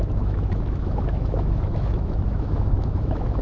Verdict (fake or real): fake